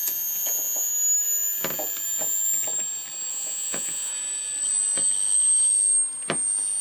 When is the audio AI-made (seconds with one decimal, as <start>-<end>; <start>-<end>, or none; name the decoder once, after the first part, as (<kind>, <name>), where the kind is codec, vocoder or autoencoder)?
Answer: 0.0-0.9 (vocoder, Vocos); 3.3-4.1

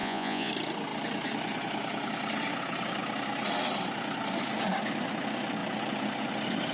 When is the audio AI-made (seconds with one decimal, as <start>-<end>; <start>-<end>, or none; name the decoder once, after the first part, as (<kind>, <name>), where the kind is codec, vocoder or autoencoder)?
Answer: 0.0-0.5 (vocoder, Vocos)

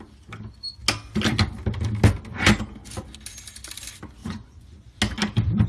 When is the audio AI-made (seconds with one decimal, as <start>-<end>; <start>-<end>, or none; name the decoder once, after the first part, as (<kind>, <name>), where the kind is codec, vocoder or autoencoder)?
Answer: 4.2-5.0 (vocoder, Vocos)